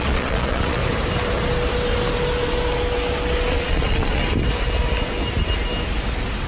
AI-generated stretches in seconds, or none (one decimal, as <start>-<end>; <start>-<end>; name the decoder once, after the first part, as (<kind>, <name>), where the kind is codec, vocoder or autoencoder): 0.0-0.8 (vocoder, Vocos); 3.5-4.2